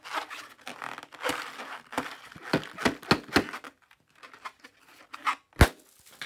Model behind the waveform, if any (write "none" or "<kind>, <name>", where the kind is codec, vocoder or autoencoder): none